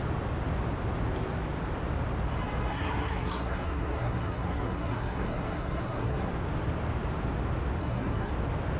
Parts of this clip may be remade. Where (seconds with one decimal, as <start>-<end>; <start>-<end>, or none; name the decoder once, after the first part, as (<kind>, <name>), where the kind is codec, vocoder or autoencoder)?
2.7-6.3 (codec, SNAC); 7.8-8.3